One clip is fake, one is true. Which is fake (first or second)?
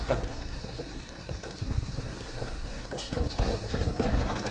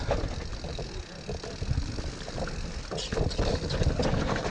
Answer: first